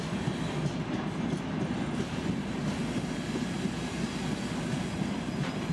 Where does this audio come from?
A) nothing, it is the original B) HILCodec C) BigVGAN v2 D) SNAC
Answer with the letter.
A